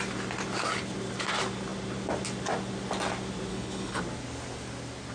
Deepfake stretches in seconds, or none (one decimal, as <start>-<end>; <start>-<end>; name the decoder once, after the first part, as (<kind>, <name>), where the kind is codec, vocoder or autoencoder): 3.5-4.0 (codec, HILCodec)